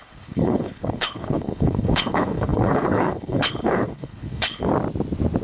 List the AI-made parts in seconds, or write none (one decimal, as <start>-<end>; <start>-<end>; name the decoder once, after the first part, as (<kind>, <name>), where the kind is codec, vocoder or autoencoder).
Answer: 0.0-4.7 (codec, HILCodec)